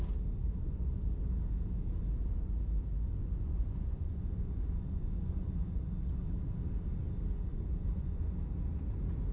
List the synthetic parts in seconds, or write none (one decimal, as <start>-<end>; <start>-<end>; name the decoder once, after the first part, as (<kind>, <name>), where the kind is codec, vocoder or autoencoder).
0.4-1.1 (vocoder, Vocos); 3.2-5.8; 7.5-8.2